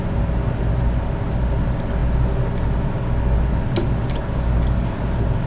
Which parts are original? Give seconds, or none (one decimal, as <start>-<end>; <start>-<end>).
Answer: 0.0-5.5